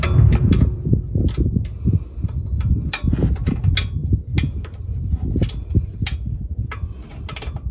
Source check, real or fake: real